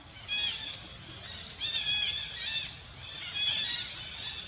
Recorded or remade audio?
recorded